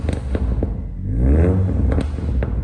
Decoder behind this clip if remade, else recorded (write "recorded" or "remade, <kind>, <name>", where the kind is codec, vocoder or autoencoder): recorded